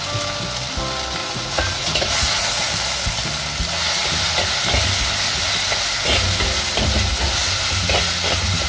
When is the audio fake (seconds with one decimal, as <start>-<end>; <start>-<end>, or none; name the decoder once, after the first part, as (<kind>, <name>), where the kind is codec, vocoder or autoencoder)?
1.2-2.7 (vocoder, Vocos)